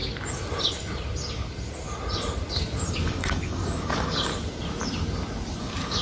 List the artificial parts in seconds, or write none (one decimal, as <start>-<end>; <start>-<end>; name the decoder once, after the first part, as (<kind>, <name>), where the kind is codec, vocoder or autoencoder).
2.9-4.3 (codec, DAC); 5.6-6.0